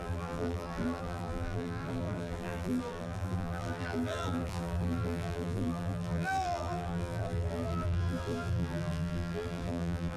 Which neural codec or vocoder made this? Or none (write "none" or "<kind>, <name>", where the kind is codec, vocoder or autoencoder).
vocoder, BigVGAN v2